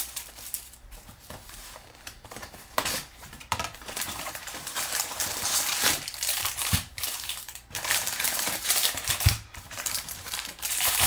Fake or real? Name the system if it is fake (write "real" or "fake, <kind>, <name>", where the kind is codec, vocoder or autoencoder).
fake, vocoder, BigVGAN v2